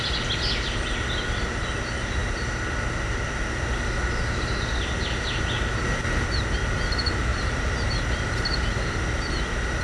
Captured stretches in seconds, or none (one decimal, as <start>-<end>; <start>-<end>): 0.0-7.3; 8.7-9.8